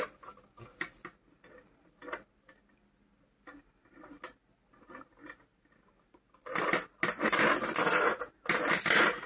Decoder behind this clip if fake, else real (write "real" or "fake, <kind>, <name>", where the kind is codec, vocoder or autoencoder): real